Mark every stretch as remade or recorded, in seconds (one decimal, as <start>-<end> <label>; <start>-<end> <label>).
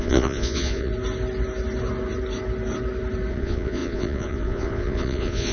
0.0-0.9 remade; 0.9-3.3 recorded; 3.3-5.5 remade